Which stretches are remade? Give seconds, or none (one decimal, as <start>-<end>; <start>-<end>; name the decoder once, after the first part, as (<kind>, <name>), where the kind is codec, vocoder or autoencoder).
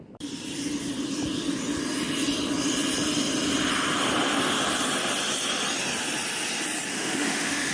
6.9-7.7 (autoencoder, DAC-VAE)